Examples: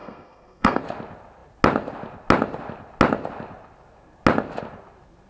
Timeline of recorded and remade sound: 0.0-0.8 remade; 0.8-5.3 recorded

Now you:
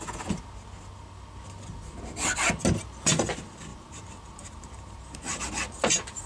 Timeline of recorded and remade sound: 0.0-3.7 recorded; 3.7-5.4 remade; 5.4-6.3 recorded

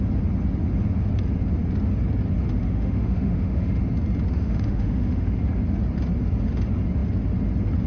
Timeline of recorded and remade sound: 0.0-2.6 recorded; 2.6-3.8 remade; 3.8-4.3 recorded; 4.3-5.4 remade; 5.4-7.9 recorded

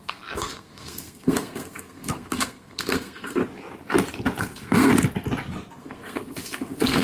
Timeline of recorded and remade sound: 0.0-3.4 remade; 3.4-4.4 recorded; 4.4-4.9 remade; 4.9-5.8 recorded; 5.8-7.0 remade

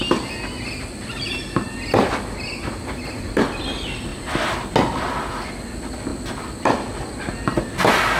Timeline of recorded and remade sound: 0.0-8.2 recorded